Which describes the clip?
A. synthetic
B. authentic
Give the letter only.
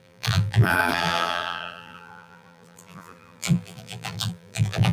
A